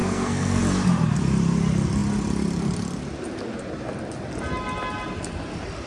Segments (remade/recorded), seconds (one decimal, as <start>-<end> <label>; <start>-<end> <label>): 0.0-0.6 remade; 0.6-5.9 recorded